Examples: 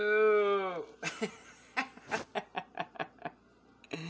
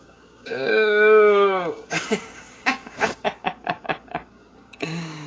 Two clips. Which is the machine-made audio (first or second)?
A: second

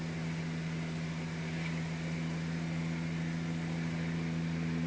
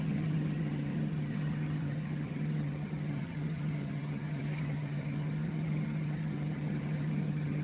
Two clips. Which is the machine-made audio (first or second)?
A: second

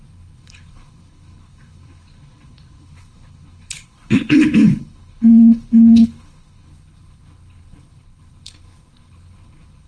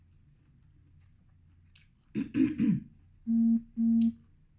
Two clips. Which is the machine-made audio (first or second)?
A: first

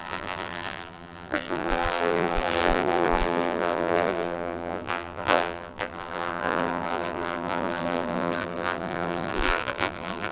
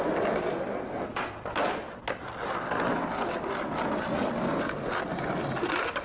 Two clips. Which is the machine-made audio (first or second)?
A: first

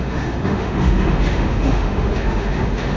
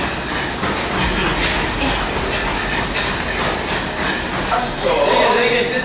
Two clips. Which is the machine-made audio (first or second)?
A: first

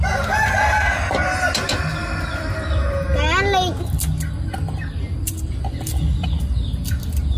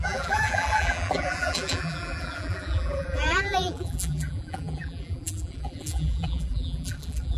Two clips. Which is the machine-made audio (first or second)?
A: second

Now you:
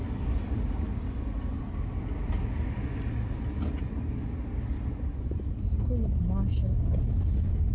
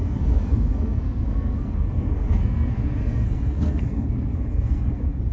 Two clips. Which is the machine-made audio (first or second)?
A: second